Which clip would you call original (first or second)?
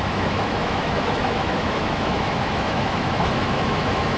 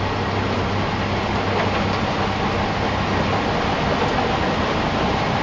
second